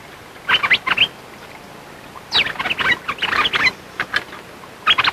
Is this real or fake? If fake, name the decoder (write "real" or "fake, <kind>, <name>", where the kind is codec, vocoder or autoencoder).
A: real